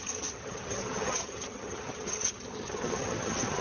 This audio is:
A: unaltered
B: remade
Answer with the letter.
B